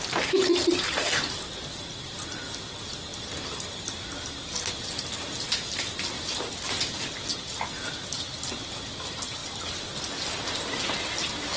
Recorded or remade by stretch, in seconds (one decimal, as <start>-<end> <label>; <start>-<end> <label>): 0.0-11.6 recorded

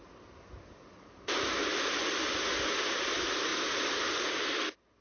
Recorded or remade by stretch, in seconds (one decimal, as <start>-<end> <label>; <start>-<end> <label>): 0.0-5.0 recorded

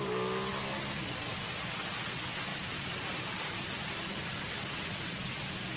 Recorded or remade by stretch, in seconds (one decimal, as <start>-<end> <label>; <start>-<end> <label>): 0.0-2.5 recorded; 2.5-3.7 remade; 3.7-5.8 recorded

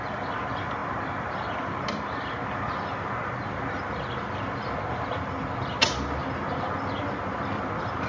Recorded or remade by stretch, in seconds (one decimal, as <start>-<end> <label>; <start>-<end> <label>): 0.0-8.1 recorded

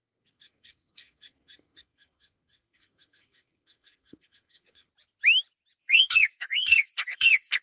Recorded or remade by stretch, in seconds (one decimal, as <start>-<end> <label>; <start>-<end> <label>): 0.0-4.9 remade; 4.9-5.8 recorded; 5.8-7.6 remade

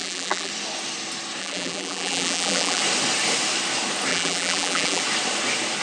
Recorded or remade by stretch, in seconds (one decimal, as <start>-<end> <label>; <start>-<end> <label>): 0.0-0.5 remade; 0.5-1.4 recorded; 1.4-2.8 remade; 2.8-4.1 recorded; 4.1-5.0 remade; 5.0-5.8 recorded